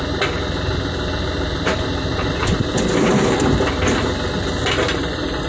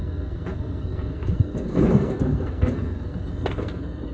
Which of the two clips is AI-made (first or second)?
second